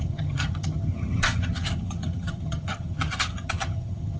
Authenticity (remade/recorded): remade